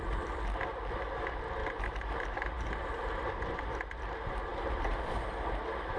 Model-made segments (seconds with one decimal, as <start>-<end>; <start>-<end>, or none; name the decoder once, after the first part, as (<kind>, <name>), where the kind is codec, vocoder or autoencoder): 1.6-3.3 (vocoder, BigVGAN v2); 4.5-5.2